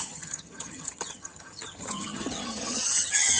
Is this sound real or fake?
fake